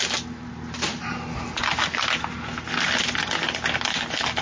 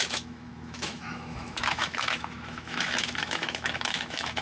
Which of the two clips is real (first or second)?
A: first